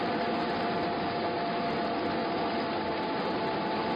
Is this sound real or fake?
real